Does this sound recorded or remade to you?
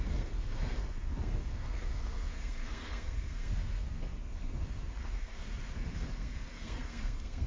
remade